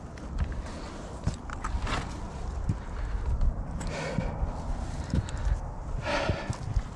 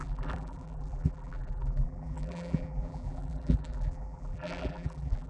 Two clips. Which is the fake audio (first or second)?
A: second